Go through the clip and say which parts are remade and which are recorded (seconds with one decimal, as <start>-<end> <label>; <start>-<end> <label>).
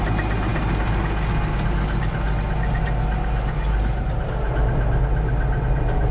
0.0-6.1 recorded